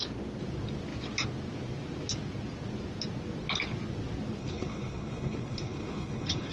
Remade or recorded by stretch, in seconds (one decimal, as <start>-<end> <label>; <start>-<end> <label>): 0.0-4.4 recorded; 4.4-6.5 remade